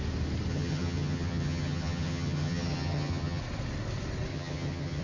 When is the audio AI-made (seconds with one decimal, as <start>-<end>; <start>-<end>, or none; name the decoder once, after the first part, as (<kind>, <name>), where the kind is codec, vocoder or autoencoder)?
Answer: 0.5-3.4 (vocoder, HiFi-GAN); 4.3-5.0